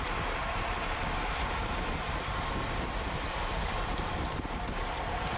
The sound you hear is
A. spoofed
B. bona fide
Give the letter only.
B